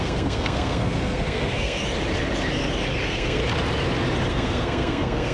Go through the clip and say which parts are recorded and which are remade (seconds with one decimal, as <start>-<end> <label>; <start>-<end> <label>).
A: 0.0-1.8 remade; 1.8-3.0 recorded; 3.0-3.4 remade; 3.4-4.3 recorded; 4.3-5.3 remade